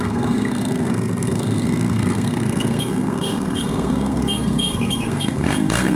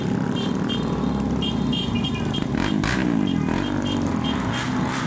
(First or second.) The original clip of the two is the second